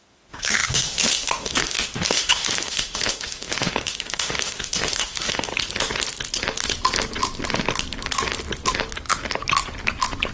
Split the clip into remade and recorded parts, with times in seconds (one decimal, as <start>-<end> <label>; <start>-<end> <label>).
0.0-5.5 remade; 5.5-10.3 recorded